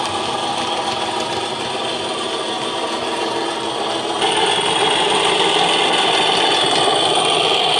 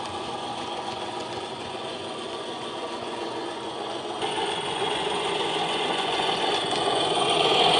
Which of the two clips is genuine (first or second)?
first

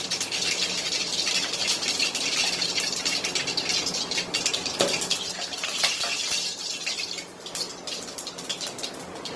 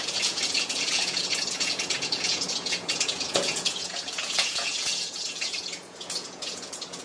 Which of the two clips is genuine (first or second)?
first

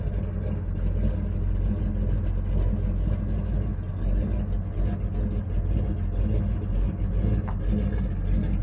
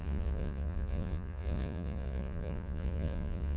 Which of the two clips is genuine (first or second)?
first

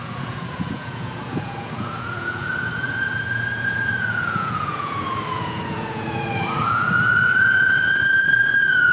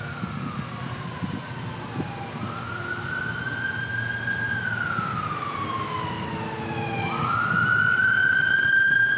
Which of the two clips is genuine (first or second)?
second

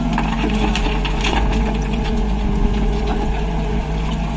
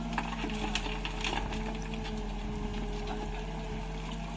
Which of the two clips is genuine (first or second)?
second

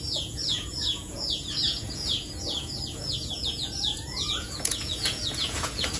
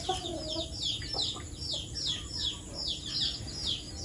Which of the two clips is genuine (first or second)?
second